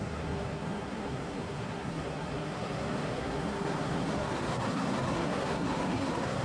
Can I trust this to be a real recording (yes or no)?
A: no